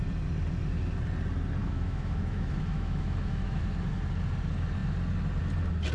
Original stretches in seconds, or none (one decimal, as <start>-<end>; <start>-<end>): 0.0-1.6; 3.6-5.9